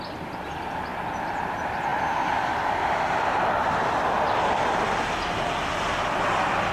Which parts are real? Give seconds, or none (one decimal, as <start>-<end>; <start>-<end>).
0.0-0.9; 1.4-6.7